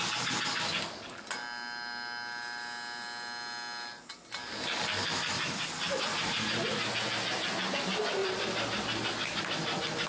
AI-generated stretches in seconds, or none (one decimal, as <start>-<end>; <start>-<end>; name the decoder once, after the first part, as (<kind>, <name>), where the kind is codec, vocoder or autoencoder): none